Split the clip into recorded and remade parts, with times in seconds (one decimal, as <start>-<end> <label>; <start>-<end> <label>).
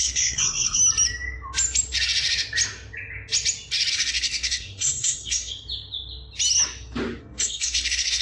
0.0-0.8 remade; 0.8-3.9 recorded; 3.9-5.5 remade; 5.5-7.2 recorded; 7.2-8.2 remade